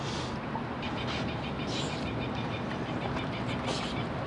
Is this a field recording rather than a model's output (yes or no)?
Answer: yes